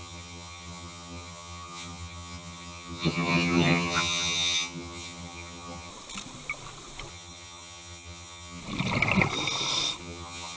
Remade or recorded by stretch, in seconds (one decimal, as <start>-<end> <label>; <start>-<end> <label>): 0.0-5.9 remade; 5.9-7.1 recorded; 7.1-8.6 remade; 8.6-10.0 recorded; 10.0-10.6 remade